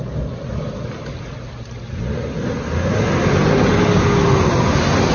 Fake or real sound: real